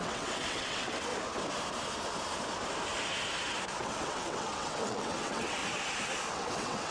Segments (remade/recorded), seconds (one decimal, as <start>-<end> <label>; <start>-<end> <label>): 0.0-1.1 remade; 1.1-3.8 recorded; 3.8-5.6 remade; 5.6-6.3 recorded; 6.3-6.9 remade